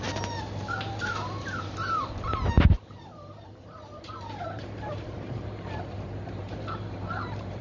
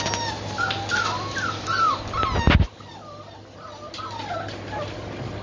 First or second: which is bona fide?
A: second